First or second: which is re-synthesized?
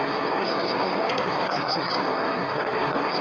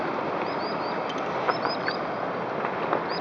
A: first